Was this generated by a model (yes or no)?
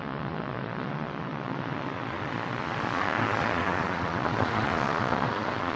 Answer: yes